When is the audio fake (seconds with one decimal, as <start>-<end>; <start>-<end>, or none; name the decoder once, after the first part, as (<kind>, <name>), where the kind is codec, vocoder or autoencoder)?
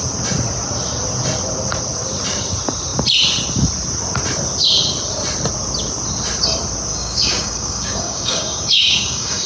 6.9-9.5 (codec, DAC)